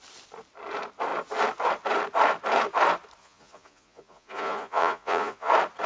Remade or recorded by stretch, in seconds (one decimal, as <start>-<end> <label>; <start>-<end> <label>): 0.0-3.2 recorded; 3.2-5.5 remade; 5.5-5.9 recorded

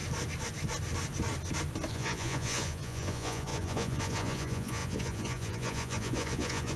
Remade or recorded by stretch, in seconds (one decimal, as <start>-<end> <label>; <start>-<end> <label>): 0.0-1.9 recorded; 1.9-6.8 remade

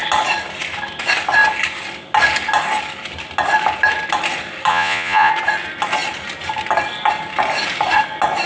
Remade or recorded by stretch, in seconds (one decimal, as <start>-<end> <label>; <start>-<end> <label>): 0.0-4.7 recorded; 4.7-5.3 remade; 5.3-8.5 recorded